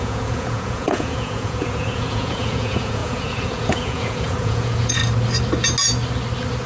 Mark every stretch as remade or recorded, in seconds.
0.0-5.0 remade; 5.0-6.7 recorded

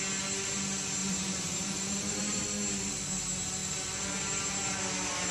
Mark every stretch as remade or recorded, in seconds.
0.0-1.0 recorded; 1.0-2.4 remade; 2.4-5.3 recorded

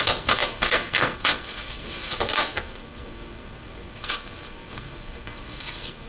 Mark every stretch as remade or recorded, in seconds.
0.0-6.1 remade